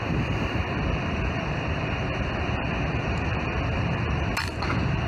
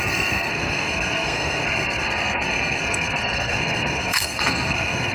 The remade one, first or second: second